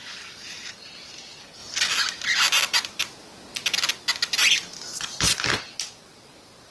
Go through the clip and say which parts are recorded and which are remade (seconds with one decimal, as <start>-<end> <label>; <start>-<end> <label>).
0.0-6.7 recorded